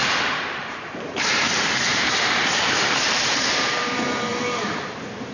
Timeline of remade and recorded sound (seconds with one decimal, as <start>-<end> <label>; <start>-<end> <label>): 0.0-5.3 remade